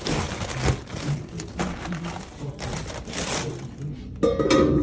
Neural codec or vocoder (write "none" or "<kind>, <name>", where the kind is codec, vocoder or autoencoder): none